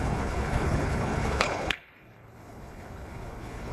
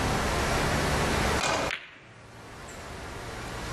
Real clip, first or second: second